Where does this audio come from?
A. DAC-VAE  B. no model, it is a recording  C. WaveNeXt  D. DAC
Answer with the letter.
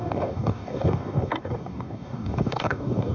D